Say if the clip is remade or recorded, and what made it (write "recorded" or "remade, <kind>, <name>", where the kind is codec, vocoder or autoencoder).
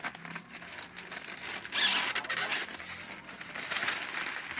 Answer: recorded